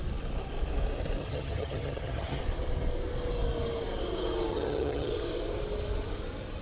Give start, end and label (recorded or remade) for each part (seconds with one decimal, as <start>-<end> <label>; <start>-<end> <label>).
0.0-1.2 recorded; 1.2-2.4 remade; 2.4-4.5 recorded; 4.5-5.1 remade; 5.1-6.6 recorded